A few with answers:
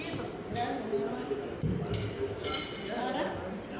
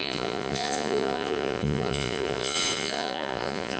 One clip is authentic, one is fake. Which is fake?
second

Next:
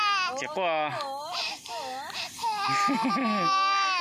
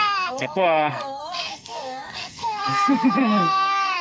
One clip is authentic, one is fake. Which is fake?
second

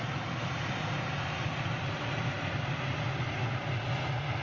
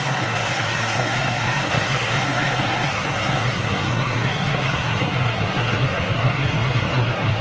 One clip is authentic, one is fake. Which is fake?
second